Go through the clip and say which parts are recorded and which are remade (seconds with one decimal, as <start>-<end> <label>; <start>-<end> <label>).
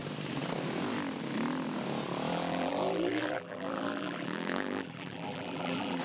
0.0-2.3 recorded; 2.3-6.0 remade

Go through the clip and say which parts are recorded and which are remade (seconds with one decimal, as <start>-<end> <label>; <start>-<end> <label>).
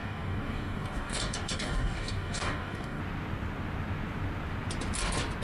0.0-3.0 remade; 3.0-5.4 recorded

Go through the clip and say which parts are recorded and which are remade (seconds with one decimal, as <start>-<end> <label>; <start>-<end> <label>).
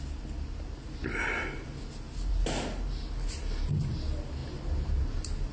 0.0-5.5 recorded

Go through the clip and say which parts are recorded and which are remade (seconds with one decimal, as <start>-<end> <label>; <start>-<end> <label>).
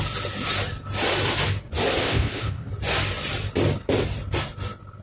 0.0-2.0 recorded; 2.0-2.7 remade; 2.7-5.0 recorded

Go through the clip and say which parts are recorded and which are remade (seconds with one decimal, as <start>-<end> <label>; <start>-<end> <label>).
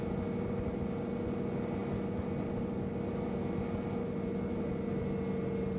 0.0-5.8 recorded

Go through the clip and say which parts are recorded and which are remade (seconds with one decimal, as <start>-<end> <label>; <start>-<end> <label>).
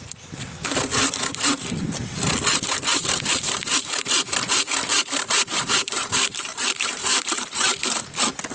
0.0-2.9 recorded; 2.9-8.0 remade; 8.0-8.5 recorded